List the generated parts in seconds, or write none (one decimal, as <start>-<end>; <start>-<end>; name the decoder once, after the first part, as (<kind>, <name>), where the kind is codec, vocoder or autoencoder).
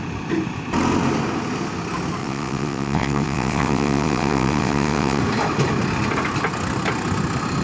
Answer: 2.2-5.2 (vocoder, WaveNeXt)